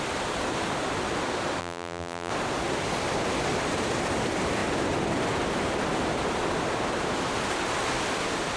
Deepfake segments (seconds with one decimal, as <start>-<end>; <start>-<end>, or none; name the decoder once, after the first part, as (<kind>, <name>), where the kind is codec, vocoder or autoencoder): 1.6-2.3 (vocoder, BigVGAN v2)